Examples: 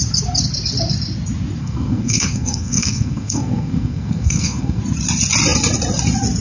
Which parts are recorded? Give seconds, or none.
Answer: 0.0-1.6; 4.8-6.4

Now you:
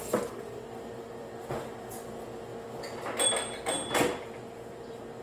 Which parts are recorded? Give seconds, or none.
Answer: 0.0-5.2